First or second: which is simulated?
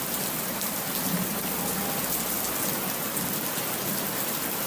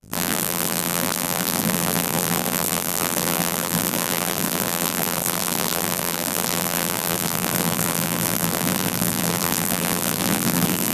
second